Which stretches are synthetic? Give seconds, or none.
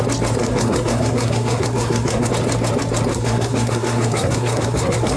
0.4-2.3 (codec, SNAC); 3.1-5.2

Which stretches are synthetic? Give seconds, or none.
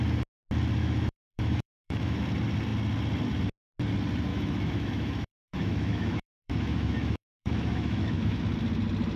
0.8-2.2 (autoencoder, DAC-VAE); 4.3-8.4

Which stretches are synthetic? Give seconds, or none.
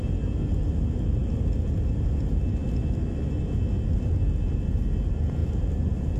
5.4-6.2 (vocoder, BigVGAN v2)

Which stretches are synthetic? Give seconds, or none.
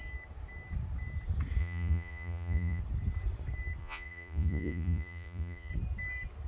1.6-2.8 (vocoder, Vocos); 3.8-5.7